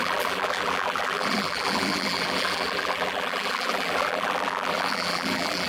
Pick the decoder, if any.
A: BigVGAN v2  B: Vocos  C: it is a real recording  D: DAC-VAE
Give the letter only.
A